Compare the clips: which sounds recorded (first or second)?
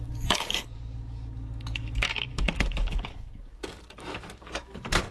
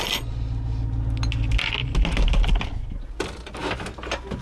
second